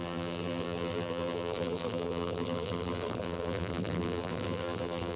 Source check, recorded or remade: remade